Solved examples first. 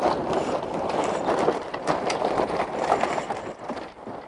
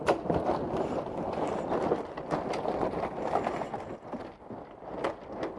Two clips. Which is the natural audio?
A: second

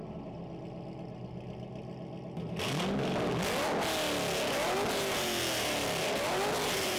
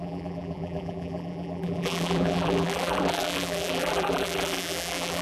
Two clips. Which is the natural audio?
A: first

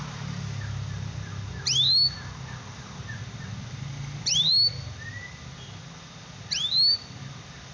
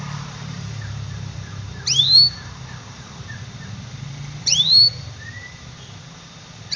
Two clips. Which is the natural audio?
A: first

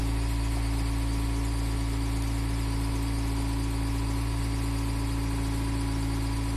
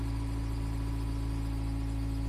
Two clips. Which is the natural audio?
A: first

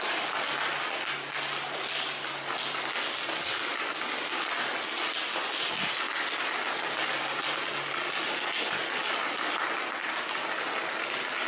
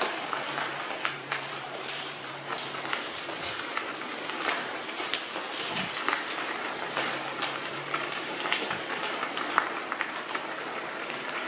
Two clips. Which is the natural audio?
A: first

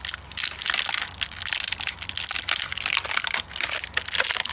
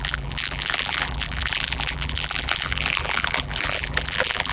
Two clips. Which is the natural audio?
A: first